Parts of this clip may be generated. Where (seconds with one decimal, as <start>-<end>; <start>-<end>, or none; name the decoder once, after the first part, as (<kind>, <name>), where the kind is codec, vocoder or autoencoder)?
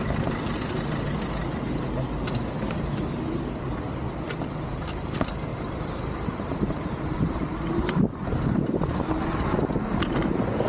5.5-9.0 (vocoder, BigVGAN v2)